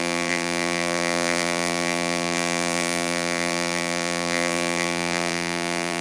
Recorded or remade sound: remade